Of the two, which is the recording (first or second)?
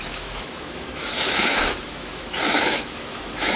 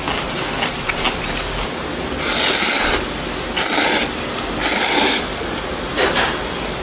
second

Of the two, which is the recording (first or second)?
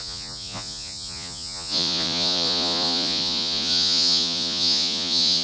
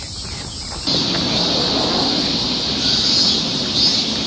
second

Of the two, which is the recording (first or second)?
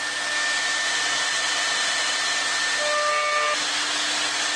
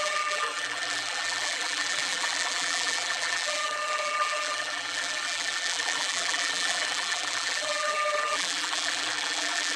first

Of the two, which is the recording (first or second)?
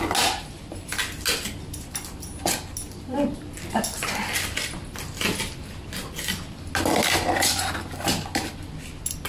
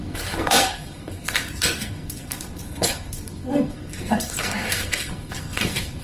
first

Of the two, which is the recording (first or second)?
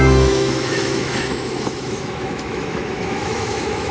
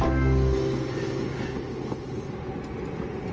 second